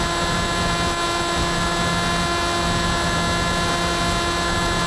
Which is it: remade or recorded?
recorded